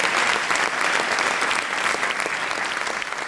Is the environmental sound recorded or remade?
recorded